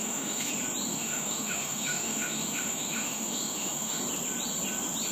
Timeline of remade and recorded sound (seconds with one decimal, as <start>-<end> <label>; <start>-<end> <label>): 0.0-0.5 remade; 0.5-0.9 recorded; 0.9-4.0 remade; 4.0-5.1 recorded